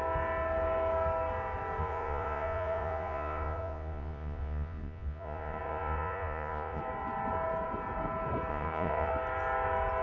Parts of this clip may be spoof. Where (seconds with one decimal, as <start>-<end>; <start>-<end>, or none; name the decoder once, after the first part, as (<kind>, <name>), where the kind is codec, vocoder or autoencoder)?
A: 1.8-6.8 (vocoder, Vocos); 8.5-9.1